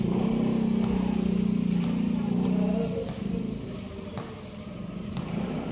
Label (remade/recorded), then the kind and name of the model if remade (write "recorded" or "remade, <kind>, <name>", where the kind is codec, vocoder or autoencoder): recorded